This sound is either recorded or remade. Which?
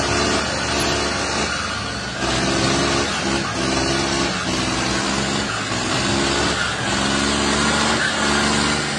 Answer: recorded